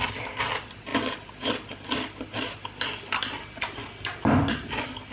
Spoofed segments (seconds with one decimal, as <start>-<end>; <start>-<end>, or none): none